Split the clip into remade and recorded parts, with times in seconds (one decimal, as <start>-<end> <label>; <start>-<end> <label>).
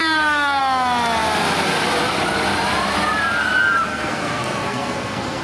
0.0-0.6 remade; 0.6-3.9 recorded; 3.9-5.4 remade